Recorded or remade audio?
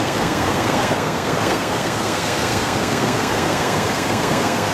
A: remade